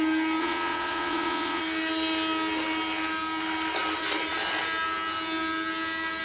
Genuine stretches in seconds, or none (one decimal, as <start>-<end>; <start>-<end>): 0.0-0.4; 1.6-6.2